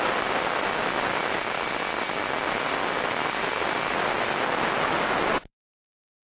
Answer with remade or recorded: recorded